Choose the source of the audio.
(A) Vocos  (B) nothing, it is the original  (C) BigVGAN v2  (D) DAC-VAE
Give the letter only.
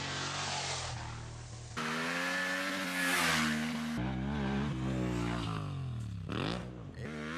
B